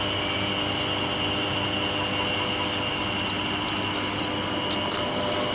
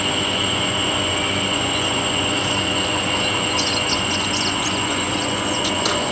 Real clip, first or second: first